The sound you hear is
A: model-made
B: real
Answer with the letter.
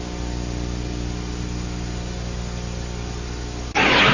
B